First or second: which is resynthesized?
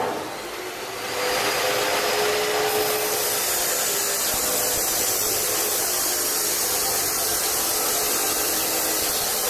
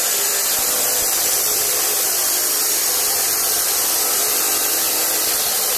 second